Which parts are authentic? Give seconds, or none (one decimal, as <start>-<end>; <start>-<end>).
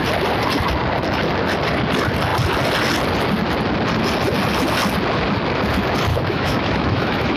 0.0-6.1